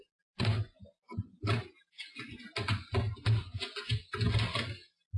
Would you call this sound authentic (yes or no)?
yes